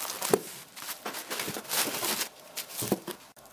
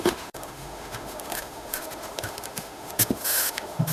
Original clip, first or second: first